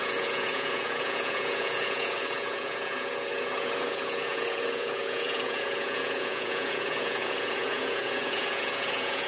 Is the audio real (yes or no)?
no